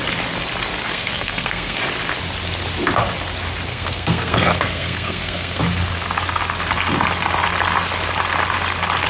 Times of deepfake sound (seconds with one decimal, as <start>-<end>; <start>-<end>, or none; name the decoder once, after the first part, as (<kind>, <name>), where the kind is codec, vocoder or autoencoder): 0.9-1.8 (codec, SNAC); 3.7-5.6